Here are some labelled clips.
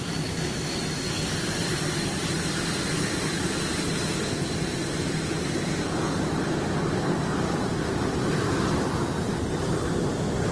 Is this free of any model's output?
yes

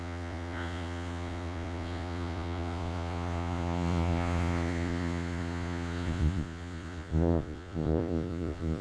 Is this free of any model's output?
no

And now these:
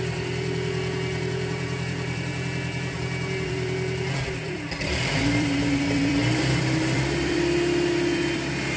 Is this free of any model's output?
no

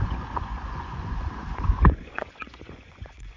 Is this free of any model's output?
no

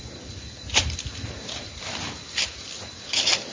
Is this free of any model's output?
yes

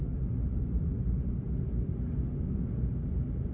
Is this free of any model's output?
yes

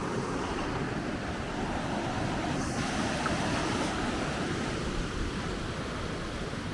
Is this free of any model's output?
no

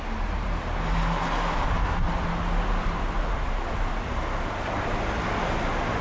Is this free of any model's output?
yes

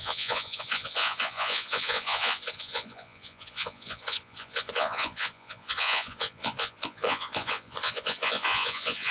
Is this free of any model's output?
no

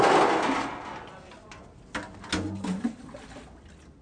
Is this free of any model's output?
yes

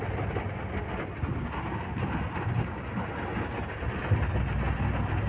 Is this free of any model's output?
yes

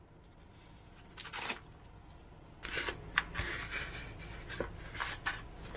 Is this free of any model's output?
yes